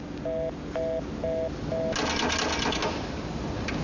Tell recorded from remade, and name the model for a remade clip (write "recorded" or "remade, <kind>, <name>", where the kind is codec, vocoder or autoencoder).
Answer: recorded